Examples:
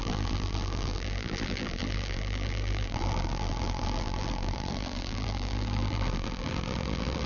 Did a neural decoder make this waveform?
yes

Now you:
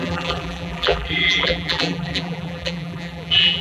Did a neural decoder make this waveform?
yes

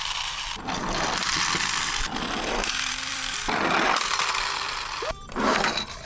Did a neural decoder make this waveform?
yes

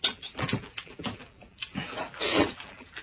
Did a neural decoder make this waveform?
yes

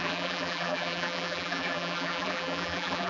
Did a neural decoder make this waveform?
yes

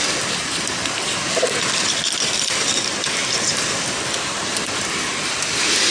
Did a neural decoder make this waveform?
yes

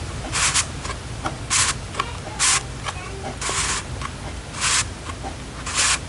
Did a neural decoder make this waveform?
no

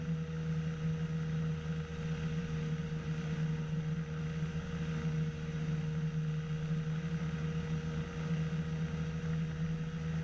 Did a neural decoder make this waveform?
no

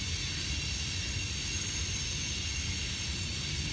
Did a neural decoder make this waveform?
no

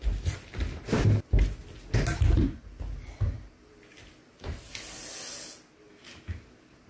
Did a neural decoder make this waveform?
no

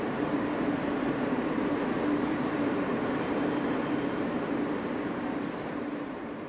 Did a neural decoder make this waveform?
yes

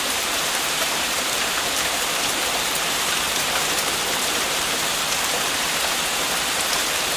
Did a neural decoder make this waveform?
yes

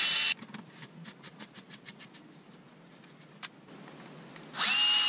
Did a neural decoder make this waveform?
no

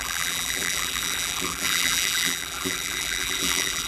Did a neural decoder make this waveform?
yes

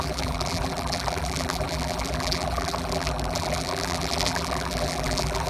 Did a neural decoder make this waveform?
yes